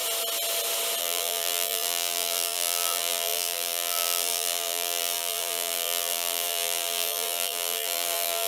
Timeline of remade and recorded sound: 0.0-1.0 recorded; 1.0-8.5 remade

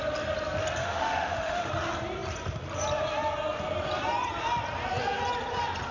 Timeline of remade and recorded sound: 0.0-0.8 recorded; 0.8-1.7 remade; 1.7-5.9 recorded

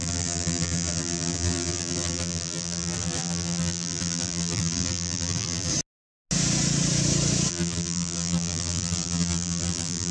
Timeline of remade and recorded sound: 0.0-5.7 remade; 5.7-7.5 recorded; 7.5-10.1 remade

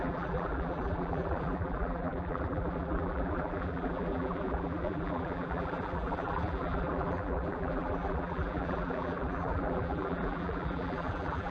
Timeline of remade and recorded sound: 0.0-11.5 remade

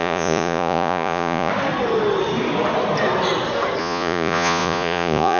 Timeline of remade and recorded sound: 0.0-1.5 remade; 1.5-3.8 recorded; 3.8-5.4 remade